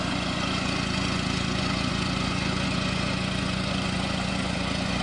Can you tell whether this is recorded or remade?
remade